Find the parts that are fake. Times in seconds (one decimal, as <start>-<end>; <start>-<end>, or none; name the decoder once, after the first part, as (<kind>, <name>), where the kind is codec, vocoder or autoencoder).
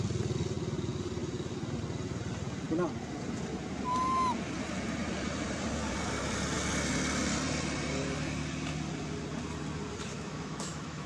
10.1-11.1 (autoencoder, DAC-VAE)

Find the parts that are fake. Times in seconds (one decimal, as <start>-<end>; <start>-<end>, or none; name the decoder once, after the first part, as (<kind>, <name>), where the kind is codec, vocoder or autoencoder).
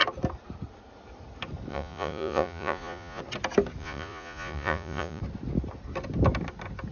1.7-3.2 (vocoder, Vocos); 3.8-5.2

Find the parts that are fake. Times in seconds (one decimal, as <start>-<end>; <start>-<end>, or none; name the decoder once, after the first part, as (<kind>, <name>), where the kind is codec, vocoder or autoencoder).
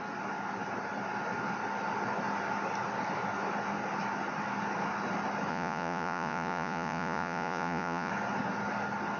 5.5-8.1 (vocoder, Vocos)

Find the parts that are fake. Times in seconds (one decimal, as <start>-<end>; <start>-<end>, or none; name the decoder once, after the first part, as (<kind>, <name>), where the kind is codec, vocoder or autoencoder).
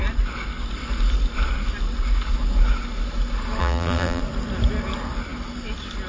3.6-4.2 (vocoder, BigVGAN v2)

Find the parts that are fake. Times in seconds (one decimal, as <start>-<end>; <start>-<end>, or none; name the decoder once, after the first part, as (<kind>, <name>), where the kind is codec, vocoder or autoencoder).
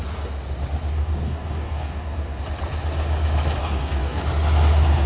0.9-2.4 (codec, DAC); 3.6-4.2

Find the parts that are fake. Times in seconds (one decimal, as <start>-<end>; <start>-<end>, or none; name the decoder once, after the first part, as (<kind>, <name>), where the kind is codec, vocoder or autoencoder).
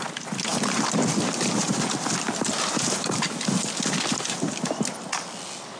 none